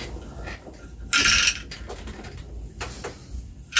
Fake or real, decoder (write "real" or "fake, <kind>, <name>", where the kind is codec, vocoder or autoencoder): real